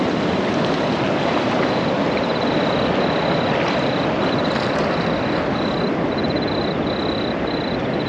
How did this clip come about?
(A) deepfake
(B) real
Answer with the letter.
B